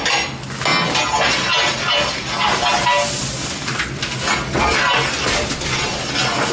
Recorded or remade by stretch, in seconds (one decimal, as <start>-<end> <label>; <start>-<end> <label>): 0.0-6.5 recorded